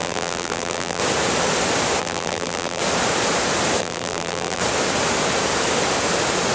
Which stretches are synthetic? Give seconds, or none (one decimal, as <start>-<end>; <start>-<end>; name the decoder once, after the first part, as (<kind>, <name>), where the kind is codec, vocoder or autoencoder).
0.0-1.0 (vocoder, BigVGAN v2); 2.0-2.8; 3.8-4.6